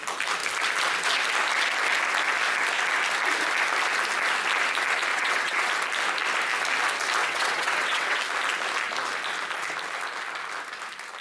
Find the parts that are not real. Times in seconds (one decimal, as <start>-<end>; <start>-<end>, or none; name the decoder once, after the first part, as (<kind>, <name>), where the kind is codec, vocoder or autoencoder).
5.1-5.7 (vocoder, WaveNeXt); 7.2-8.2